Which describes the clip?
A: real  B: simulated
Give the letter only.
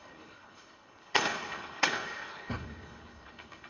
B